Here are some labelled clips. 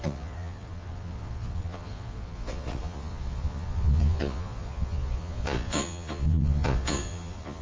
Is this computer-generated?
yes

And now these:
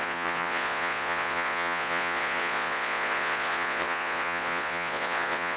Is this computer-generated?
yes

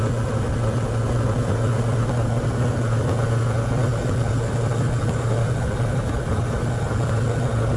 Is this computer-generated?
no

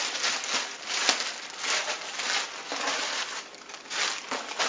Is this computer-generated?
no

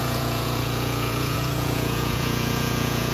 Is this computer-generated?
yes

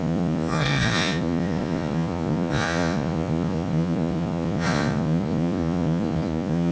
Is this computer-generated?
yes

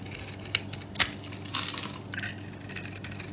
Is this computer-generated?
no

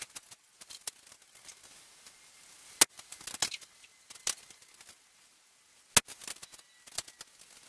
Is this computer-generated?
no